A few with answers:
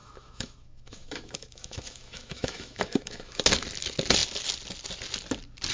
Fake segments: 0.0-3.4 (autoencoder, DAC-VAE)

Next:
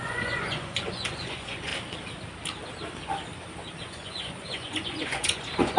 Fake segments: 0.0-1.7 (vocoder, Vocos); 3.8-5.8

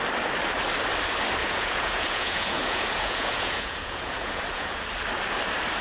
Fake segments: 1.4-4.8 (vocoder, Vocos)

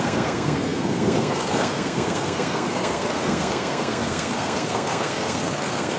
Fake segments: 0.0-6.0 (codec, SNAC)

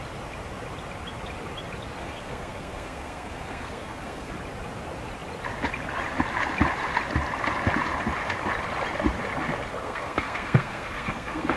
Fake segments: 2.0-4.3 (codec, SNAC); 9.8-11.6

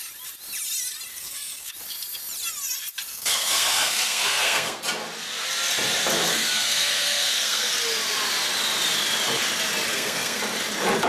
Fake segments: 1.1-1.7 (codec, SNAC); 3.1-4.8; 6.3-7.7; 9.9-10.4

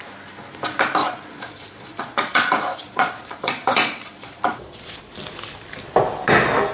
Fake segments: 1.0-5.0 (vocoder, Vocos)

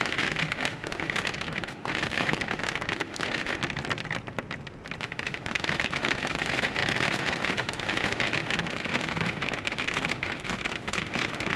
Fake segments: 0.0-3.6 (autoencoder, DAC-VAE); 5.0-11.6